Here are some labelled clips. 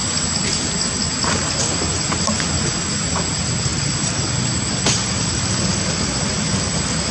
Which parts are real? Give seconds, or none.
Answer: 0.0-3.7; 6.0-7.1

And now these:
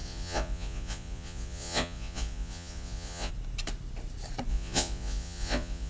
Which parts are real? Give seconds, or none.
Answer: 3.3-4.5

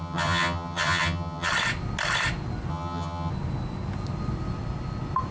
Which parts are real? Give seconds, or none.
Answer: 1.5-2.7; 3.3-5.3

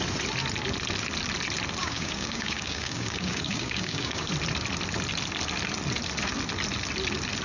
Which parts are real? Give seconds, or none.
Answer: 0.0-1.8; 4.3-7.4

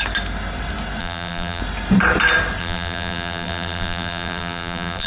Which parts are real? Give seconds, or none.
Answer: 0.0-1.0; 1.6-2.6

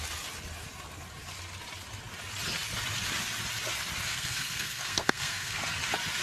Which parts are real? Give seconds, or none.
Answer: 0.0-4.1; 5.6-6.2

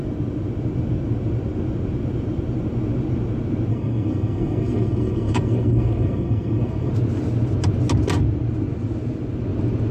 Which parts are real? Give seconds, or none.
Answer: 0.0-3.7; 6.9-9.9

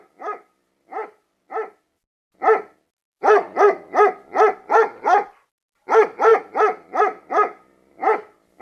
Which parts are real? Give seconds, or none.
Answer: 0.0-8.6